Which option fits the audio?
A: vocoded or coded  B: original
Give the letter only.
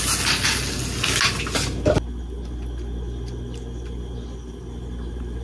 B